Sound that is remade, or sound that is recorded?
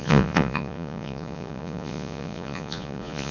remade